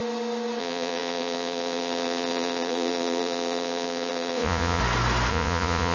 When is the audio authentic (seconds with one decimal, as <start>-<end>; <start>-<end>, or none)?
0.0-0.6; 4.8-5.3